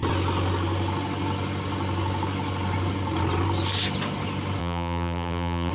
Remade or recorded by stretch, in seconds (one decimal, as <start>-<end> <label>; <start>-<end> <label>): 0.0-4.6 recorded; 4.6-5.7 remade